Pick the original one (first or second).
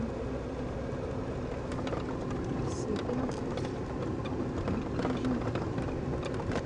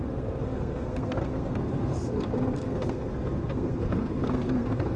first